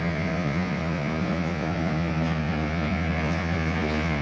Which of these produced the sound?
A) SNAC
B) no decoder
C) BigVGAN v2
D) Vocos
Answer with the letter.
D